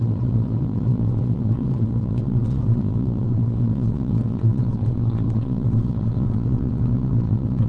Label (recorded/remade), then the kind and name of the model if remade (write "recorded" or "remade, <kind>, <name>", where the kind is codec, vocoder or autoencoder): remade, vocoder, WaveNeXt